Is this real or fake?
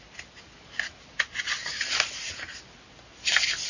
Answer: real